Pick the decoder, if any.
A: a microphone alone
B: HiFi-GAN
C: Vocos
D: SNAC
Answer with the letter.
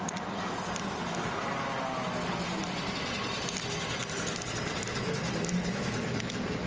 A